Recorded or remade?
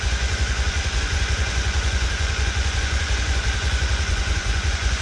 remade